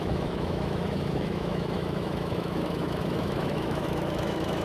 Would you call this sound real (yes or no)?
no